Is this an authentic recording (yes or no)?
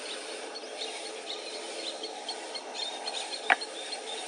yes